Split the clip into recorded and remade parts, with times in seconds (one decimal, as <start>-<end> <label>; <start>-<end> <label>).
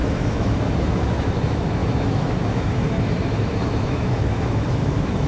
0.0-5.3 remade